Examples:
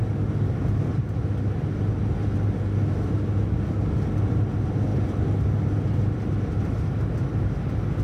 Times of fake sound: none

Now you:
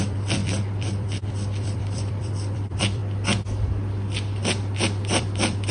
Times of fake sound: 0.0-3.0 (vocoder, BigVGAN v2); 5.2-5.7

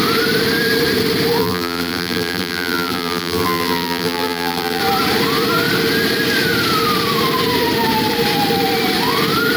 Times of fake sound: 1.4-4.8 (vocoder, BigVGAN v2)